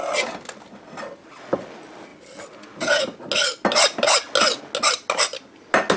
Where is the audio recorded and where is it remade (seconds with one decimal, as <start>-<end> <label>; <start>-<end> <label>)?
0.0-6.0 recorded